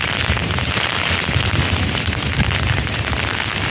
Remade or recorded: recorded